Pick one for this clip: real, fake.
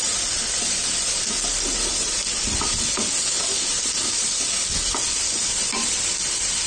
real